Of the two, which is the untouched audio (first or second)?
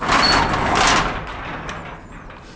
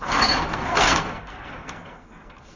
first